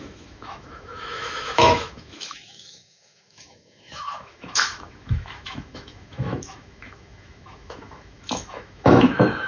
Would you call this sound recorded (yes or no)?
no